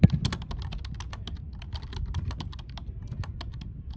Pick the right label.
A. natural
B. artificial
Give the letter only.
A